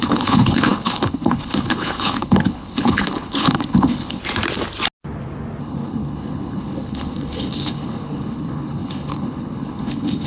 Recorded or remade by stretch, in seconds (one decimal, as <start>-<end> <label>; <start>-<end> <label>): 0.0-4.2 remade; 4.2-5.6 recorded; 5.6-10.3 remade